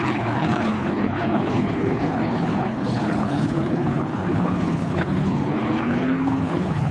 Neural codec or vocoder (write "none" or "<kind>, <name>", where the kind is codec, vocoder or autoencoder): codec, HILCodec